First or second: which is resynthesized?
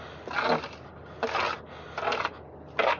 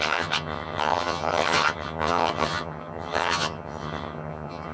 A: second